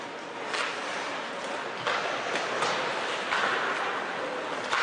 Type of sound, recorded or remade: recorded